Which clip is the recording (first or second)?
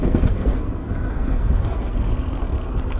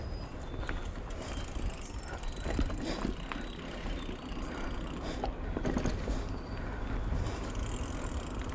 second